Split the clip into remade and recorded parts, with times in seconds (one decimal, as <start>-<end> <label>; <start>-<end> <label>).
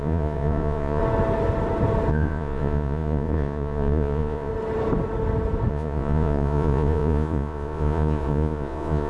0.0-1.0 remade; 1.0-2.1 recorded; 2.1-4.5 remade; 4.5-5.7 recorded; 5.7-9.1 remade